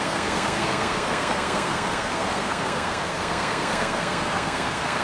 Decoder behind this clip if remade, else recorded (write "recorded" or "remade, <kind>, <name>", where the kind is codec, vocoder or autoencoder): remade, codec, SNAC